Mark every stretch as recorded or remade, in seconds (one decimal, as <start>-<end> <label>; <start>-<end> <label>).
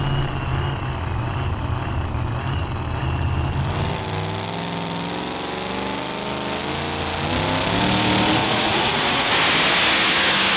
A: 0.0-8.4 recorded; 8.4-9.3 remade; 9.3-10.6 recorded